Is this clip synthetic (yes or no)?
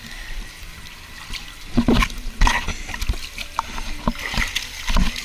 no